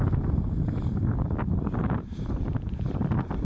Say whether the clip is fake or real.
real